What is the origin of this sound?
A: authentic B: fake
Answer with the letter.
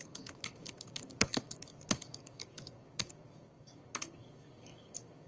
B